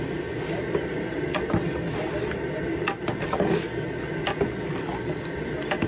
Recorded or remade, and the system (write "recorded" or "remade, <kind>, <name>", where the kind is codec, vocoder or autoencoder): recorded